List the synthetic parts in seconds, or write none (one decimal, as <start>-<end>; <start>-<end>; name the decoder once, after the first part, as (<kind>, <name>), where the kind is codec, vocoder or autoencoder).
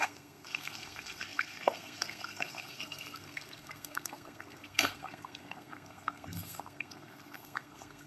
0.0-8.1 (codec, SNAC)